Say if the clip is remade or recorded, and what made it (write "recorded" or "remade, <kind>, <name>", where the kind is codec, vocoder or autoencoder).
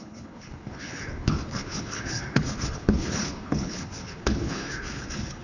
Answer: remade, codec, HILCodec